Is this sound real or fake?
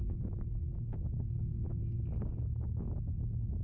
real